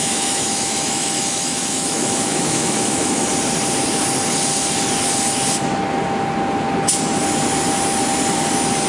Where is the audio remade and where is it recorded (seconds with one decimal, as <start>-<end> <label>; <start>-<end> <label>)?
0.0-3.2 remade; 3.2-8.9 recorded